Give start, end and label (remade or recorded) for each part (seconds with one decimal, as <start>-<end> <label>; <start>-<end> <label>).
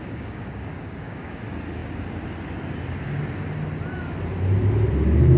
0.0-1.4 remade; 1.4-5.4 recorded